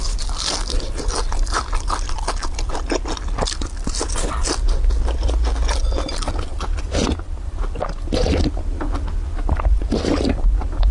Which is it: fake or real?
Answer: real